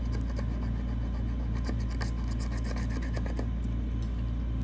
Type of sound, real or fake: real